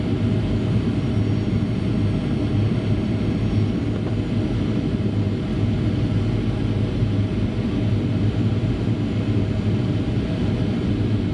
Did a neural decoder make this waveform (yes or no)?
no